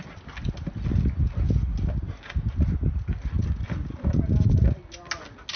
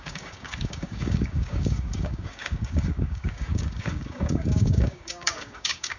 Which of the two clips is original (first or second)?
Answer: first